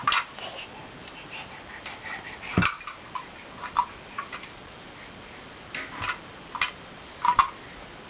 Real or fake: real